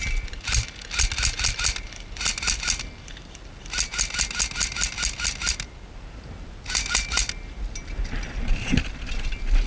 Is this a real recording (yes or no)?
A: yes